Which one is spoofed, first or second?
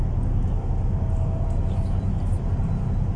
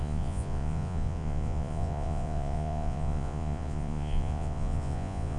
second